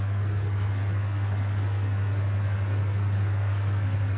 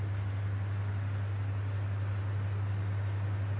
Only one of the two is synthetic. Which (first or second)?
first